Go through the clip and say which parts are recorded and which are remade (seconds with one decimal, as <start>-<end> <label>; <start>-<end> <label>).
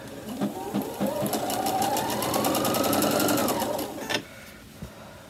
0.0-5.3 recorded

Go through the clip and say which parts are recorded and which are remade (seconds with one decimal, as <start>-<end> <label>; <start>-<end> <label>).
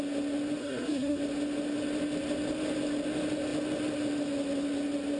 0.0-0.6 recorded; 0.6-1.2 remade; 1.2-5.2 recorded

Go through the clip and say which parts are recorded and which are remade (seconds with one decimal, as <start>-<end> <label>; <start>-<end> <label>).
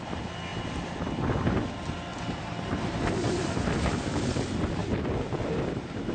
0.0-6.1 recorded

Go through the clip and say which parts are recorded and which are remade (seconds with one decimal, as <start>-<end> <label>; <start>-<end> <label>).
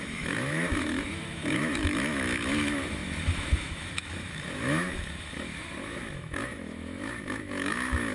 0.0-8.1 remade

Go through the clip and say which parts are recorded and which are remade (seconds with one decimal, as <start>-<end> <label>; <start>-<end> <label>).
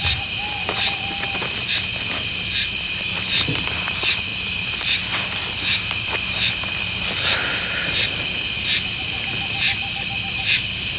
0.0-4.3 recorded; 4.3-8.5 remade; 8.5-11.0 recorded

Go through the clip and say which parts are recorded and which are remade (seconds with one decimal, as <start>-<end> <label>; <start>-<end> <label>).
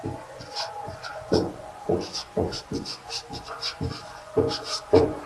0.0-5.3 remade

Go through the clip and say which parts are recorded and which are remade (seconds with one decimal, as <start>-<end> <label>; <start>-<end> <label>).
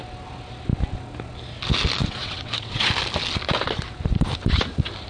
0.0-2.0 recorded; 2.0-2.9 remade; 2.9-5.1 recorded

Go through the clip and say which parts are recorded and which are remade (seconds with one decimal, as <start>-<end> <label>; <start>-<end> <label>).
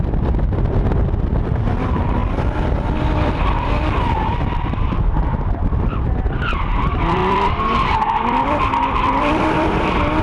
0.0-10.2 remade